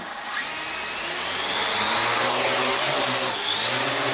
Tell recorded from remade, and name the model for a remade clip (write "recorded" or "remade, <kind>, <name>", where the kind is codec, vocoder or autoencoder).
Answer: recorded